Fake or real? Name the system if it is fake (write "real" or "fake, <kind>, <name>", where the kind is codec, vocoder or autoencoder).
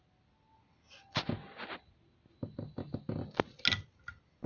real